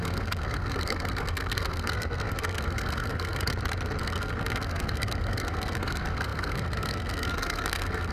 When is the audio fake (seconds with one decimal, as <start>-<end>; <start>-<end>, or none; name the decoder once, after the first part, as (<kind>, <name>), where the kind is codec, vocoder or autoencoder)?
0.0-3.5 (codec, SNAC); 4.0-8.1

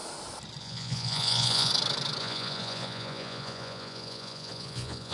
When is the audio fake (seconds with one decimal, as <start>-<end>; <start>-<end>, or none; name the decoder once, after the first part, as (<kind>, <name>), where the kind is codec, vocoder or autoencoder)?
0.6-1.7 (vocoder, Vocos); 2.2-5.1